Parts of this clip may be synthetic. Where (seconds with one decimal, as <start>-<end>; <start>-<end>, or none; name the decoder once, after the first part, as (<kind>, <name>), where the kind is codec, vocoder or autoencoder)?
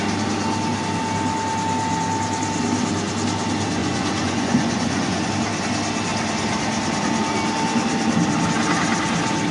3.8-5.3 (vocoder, Vocos)